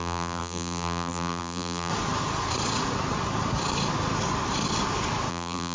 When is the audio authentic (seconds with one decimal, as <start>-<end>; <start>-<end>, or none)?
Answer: 1.9-5.3